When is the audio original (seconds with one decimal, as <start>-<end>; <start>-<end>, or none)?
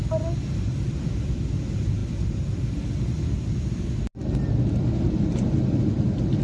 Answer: 0.0-6.4